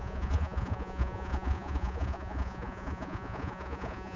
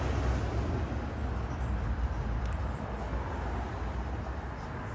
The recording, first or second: second